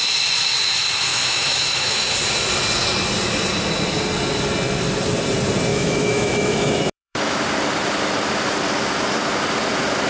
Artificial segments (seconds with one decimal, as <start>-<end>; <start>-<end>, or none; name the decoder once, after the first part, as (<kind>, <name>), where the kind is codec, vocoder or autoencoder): 1.1-2.0 (autoencoder, DAC-VAE); 5.7-7.4